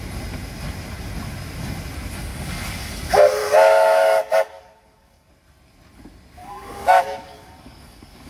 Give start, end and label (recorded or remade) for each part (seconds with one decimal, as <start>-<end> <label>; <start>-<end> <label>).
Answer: 0.0-2.3 recorded; 2.3-2.9 remade; 2.9-3.4 recorded; 3.4-5.3 remade; 5.3-6.4 recorded; 6.4-8.3 remade